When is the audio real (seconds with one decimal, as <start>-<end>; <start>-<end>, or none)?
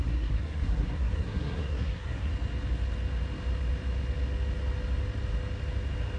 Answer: 2.3-6.2